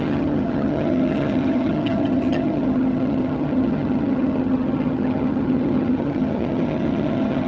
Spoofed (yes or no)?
yes